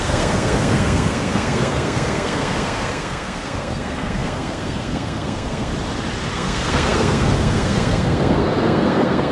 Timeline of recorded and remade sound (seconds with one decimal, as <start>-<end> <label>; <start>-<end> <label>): 0.0-5.7 remade; 5.7-6.3 recorded; 6.3-9.3 remade